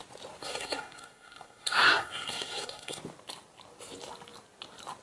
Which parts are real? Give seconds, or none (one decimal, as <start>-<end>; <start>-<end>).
0.0-0.4; 3.0-5.0